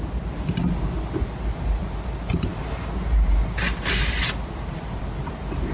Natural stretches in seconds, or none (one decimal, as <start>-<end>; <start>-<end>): 0.0-5.7